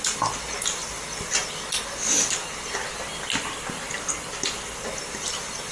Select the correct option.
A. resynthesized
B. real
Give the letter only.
B